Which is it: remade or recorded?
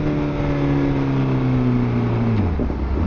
recorded